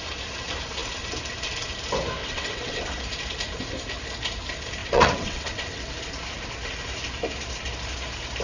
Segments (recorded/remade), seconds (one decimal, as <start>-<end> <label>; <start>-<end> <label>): 0.0-2.2 recorded; 2.2-2.8 remade; 2.8-4.8 recorded; 4.8-5.9 remade; 5.9-8.4 recorded